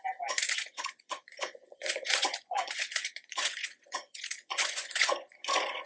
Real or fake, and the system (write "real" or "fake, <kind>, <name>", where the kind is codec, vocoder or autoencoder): fake, vocoder, Vocos